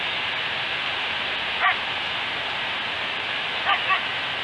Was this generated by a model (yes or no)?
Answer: no